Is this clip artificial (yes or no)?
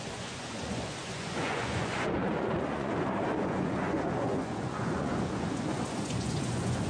yes